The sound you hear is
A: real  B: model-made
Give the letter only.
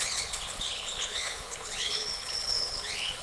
B